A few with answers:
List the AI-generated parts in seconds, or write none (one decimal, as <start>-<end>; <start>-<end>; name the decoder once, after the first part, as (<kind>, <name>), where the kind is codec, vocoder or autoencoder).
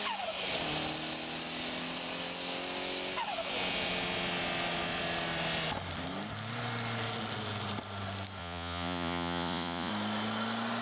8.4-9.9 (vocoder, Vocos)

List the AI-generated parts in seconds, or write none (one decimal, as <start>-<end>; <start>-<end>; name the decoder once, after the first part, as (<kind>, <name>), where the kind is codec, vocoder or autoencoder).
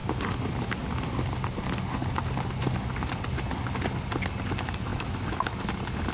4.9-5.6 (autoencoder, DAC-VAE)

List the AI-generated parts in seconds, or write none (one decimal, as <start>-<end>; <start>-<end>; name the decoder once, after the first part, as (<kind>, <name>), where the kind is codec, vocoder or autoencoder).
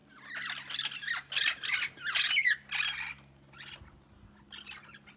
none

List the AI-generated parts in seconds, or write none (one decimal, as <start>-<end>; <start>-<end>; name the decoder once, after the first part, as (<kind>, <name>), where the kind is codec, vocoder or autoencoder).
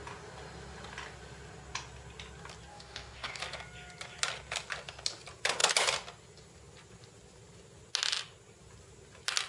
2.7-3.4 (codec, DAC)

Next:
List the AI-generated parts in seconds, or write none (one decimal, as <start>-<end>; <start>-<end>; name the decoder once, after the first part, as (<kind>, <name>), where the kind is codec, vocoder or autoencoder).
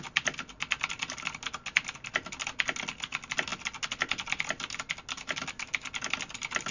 none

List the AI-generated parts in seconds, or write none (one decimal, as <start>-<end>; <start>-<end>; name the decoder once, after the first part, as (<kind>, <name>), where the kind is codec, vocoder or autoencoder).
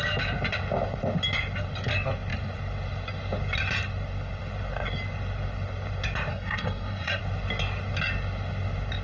6.3-7.2 (codec, SNAC)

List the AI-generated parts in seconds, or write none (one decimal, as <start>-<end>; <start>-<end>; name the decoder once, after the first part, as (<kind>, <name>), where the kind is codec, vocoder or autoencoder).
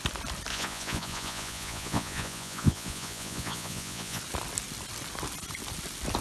0.5-4.2 (vocoder, Vocos)